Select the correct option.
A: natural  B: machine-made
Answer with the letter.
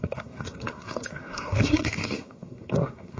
B